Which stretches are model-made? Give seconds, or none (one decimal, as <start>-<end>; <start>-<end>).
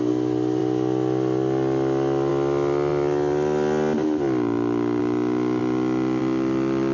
none